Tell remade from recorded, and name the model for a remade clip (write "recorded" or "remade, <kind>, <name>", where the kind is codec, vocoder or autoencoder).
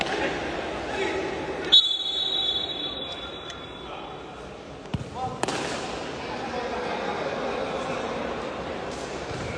recorded